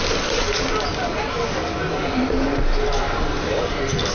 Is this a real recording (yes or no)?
yes